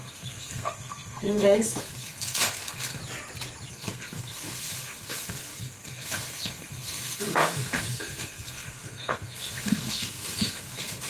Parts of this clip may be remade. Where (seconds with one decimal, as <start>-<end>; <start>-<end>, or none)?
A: 0.0-3.0; 3.7-11.1